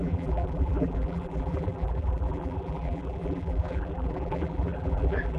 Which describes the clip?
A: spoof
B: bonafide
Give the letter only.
A